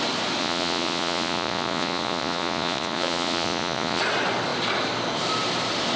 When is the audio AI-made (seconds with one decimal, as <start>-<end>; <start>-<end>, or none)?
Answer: 0.4-4.0